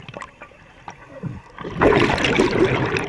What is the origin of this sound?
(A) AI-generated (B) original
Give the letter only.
B